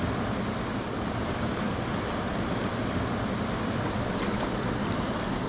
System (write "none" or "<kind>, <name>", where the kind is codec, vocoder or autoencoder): none